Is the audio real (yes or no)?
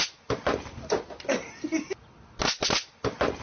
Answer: yes